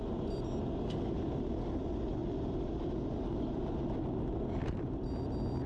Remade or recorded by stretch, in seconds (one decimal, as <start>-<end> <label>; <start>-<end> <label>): 0.0-5.7 recorded